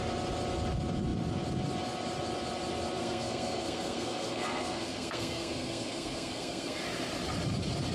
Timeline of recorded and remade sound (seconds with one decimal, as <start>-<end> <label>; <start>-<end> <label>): 0.0-3.0 recorded; 3.0-6.8 remade; 6.8-7.9 recorded